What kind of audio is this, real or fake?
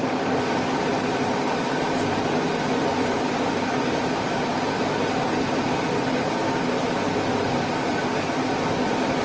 real